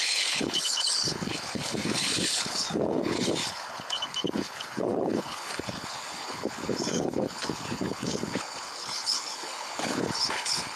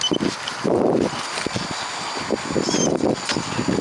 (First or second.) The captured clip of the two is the second